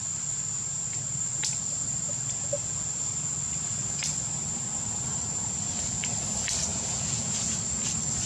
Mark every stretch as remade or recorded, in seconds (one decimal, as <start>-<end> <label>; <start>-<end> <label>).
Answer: 0.0-6.7 recorded; 6.7-7.6 remade; 7.6-8.3 recorded